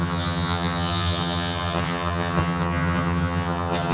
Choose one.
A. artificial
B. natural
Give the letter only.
A